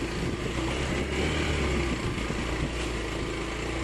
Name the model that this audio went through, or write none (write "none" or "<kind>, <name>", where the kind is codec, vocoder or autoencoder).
none